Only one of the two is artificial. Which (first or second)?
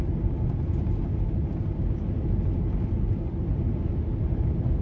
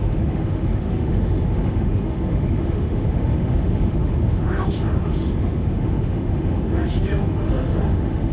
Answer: second